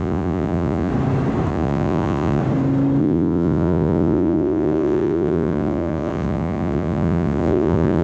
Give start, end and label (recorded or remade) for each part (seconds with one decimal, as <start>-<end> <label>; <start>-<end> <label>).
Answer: 0.0-0.9 remade; 0.9-1.5 recorded; 1.5-2.4 remade; 2.4-3.0 recorded; 3.0-8.0 remade